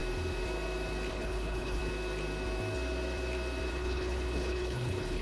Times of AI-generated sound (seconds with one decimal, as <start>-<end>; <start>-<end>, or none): 1.1-1.8; 3.7-5.2